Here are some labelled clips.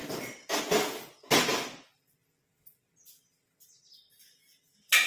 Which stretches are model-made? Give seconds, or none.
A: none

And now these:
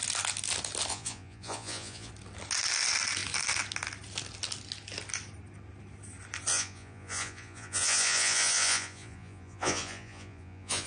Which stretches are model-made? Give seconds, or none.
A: 0.9-2.1 (vocoder, Vocos); 6.5-10.9

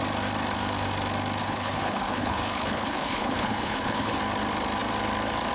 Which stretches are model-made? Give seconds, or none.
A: 1.4-4.2 (codec, HILCodec)

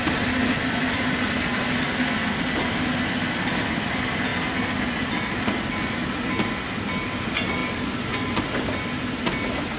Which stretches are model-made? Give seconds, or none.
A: none

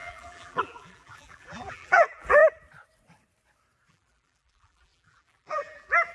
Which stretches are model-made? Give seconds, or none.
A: 0.0-2.4 (vocoder, BigVGAN v2); 3.9-6.1

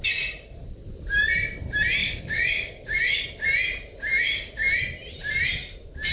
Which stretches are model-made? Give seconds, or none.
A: 2.0-3.2 (codec, DAC); 4.1-4.8

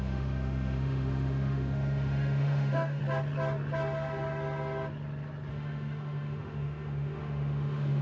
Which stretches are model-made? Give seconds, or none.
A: 0.0-3.0 (autoencoder, DAC-VAE); 5.5-8.0

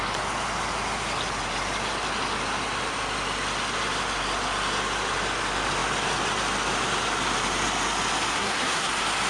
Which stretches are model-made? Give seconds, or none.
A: 8.3-8.9 (codec, SNAC)